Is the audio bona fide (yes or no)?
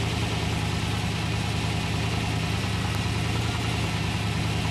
yes